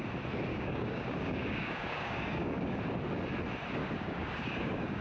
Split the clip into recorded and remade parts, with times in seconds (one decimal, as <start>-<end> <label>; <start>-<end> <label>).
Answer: 0.0-0.5 recorded; 0.5-2.8 remade; 2.8-3.8 recorded; 3.8-5.0 remade